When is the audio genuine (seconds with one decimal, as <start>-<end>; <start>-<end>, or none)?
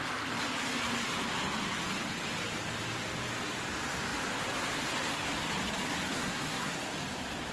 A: 0.0-6.1; 6.7-7.5